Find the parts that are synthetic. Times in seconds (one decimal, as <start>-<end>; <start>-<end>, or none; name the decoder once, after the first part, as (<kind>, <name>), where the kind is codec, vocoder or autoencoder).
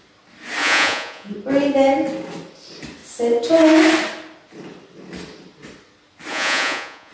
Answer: 0.6-1.3 (vocoder, Vocos); 6.3-7.1